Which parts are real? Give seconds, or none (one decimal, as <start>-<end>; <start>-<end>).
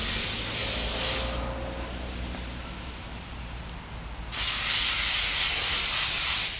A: 0.0-6.6